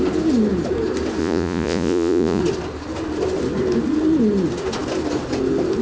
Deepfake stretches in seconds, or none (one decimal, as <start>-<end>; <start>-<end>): 1.2-2.4